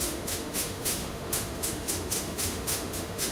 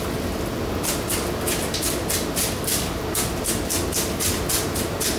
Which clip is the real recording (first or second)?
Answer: second